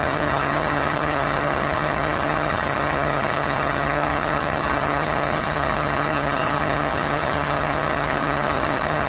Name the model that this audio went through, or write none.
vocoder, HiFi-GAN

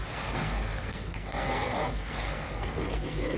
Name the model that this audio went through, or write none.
codec, SNAC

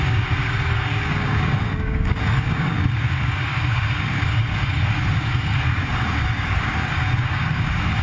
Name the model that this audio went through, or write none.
codec, DAC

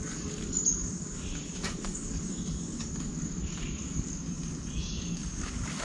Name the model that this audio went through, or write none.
codec, DAC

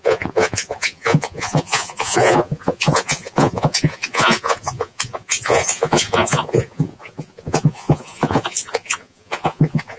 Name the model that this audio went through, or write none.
vocoder, Vocos